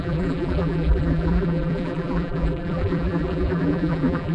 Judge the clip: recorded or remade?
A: remade